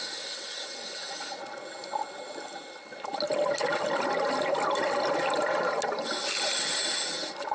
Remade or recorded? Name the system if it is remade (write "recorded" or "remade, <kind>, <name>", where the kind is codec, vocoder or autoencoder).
recorded